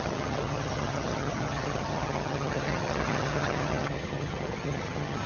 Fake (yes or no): yes